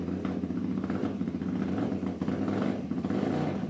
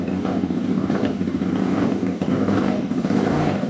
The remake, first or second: second